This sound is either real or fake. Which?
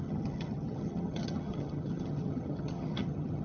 fake